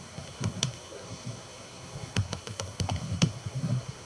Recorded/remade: remade